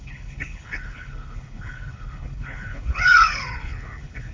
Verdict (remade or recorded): remade